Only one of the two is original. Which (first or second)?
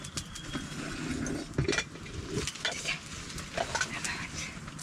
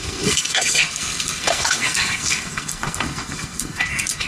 first